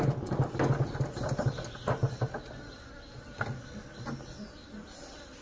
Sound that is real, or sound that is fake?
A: real